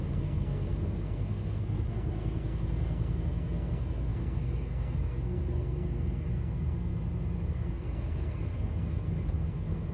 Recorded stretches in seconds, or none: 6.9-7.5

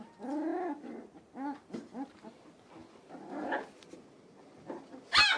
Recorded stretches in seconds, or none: 0.0-5.4

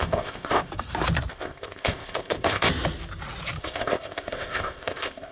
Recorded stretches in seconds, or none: 0.7-1.3; 2.7-3.6

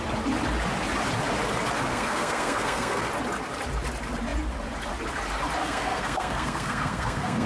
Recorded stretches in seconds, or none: 0.0-1.9; 3.1-5.6

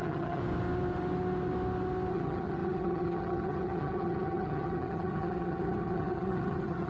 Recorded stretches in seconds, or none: 0.4-2.1

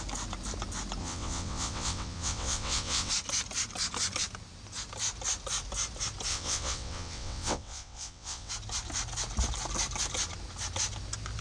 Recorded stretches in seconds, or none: 0.0-1.0; 3.1-6.3; 8.5-11.4

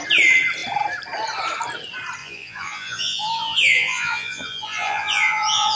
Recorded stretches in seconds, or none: 0.0-2.2

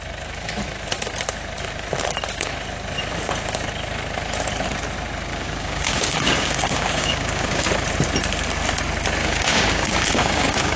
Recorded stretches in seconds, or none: 0.0-5.3; 7.7-9.2